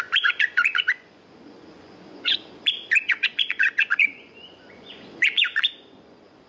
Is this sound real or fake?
fake